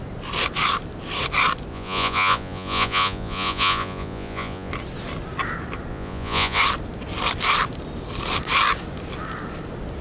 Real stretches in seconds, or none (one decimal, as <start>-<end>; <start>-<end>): 0.0-1.7; 4.7-5.9; 6.6-10.0